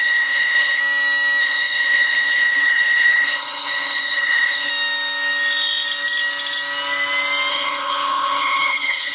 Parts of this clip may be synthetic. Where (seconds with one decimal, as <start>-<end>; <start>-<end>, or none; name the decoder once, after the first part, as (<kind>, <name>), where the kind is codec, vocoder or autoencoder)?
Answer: 0.0-0.8 (codec, HILCodec); 1.4-4.7; 7.5-9.1